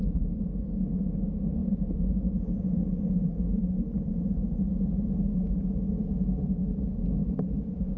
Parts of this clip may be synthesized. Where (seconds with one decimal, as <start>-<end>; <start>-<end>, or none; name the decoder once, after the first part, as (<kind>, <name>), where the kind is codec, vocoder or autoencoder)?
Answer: 1.6-2.4 (vocoder, BigVGAN v2); 2.9-4.6; 7.2-8.0